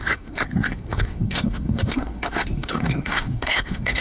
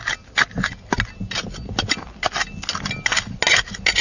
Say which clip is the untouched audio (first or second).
second